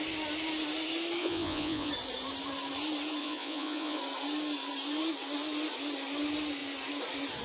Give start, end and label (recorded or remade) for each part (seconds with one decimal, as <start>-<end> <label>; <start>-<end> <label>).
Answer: 0.0-1.2 recorded; 1.2-1.9 remade; 1.9-3.2 recorded; 3.2-4.0 remade; 4.0-7.4 recorded